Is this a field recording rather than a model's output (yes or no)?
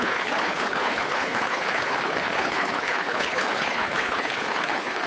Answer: no